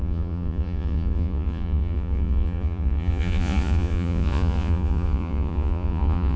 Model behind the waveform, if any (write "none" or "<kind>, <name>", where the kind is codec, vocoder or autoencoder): vocoder, Vocos